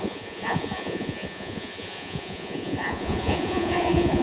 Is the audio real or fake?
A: fake